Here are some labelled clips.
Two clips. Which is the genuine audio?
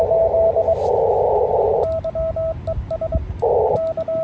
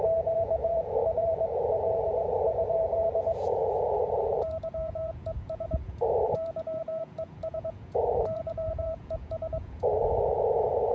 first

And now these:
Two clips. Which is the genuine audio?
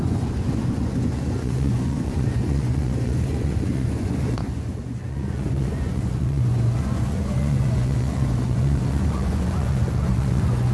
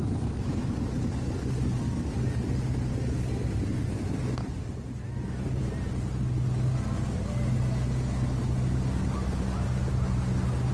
second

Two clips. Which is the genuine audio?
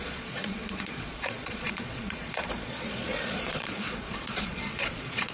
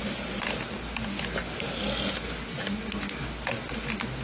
second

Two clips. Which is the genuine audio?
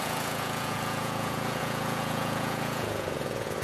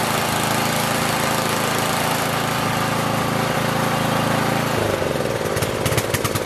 second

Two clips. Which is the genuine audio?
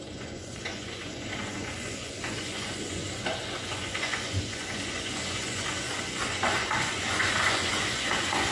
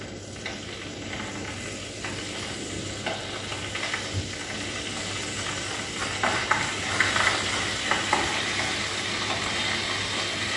second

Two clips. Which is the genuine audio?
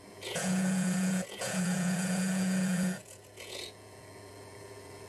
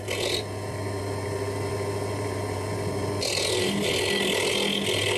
second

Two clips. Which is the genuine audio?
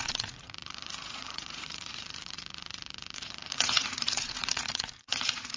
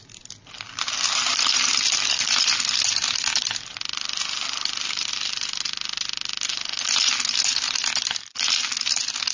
second